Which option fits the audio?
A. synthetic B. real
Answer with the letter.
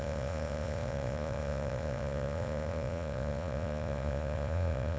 A